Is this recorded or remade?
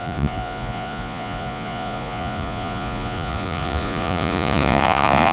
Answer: remade